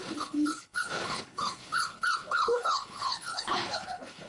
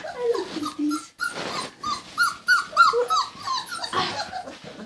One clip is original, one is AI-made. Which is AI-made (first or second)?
first